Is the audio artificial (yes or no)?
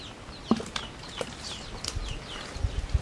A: no